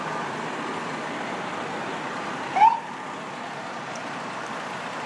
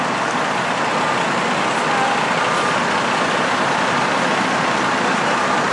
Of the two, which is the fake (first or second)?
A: first